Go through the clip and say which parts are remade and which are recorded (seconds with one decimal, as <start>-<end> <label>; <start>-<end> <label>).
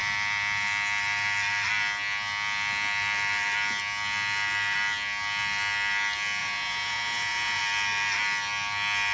0.0-6.4 recorded; 6.4-7.6 remade; 7.6-9.1 recorded